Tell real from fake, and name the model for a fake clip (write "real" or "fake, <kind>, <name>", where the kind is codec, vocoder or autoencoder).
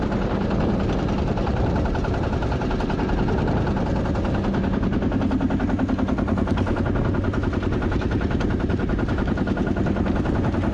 real